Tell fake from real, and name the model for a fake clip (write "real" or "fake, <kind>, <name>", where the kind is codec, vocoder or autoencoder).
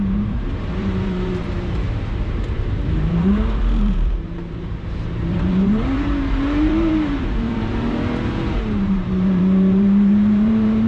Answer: fake, vocoder, BigVGAN v2